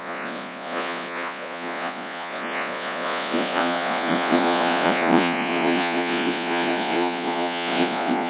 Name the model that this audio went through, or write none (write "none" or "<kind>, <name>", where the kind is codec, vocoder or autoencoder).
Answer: vocoder, Vocos